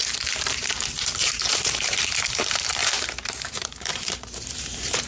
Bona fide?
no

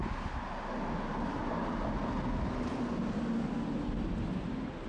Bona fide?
yes